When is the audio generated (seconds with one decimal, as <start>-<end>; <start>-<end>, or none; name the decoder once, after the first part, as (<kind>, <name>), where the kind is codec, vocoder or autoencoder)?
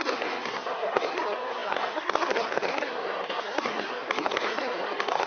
0.0-5.3 (codec, SNAC)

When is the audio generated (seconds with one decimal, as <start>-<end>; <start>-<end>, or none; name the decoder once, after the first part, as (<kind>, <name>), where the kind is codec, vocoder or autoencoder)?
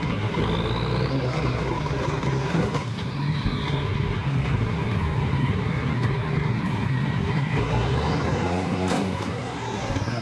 0.0-0.4 (codec, SNAC); 1.1-10.2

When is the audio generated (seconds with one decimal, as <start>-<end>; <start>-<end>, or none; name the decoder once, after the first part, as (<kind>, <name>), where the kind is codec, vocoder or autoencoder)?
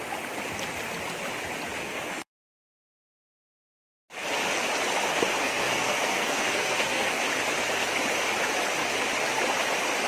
1.8-2.7 (codec, SNAC); 5.4-7.2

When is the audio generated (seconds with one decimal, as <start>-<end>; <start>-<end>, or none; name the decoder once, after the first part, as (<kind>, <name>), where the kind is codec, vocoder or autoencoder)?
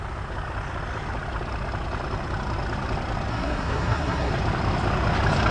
3.3-4.3 (codec, SNAC)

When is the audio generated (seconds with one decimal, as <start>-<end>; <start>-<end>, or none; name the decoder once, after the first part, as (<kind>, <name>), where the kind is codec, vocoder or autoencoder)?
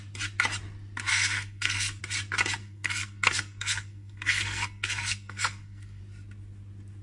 1.1-2.0 (codec, SNAC); 2.6-6.0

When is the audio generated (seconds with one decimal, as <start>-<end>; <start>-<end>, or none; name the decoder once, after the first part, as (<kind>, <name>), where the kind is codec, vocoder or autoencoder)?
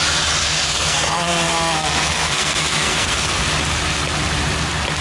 0.4-3.4 (codec, SNAC)